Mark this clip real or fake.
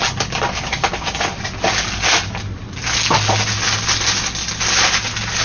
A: real